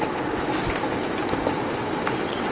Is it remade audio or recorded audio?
recorded